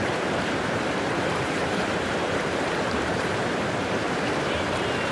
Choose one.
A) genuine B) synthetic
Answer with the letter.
B